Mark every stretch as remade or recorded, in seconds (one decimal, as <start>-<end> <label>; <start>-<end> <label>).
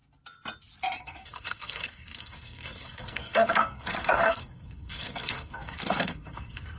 0.0-1.0 recorded; 1.0-6.8 remade